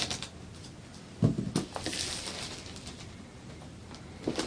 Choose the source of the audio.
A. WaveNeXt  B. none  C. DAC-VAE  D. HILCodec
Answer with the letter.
B